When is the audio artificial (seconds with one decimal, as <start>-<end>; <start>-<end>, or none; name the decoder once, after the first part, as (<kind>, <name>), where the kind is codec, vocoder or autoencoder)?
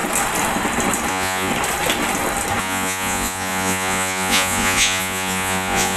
1.1-1.5 (vocoder, Vocos); 2.6-6.0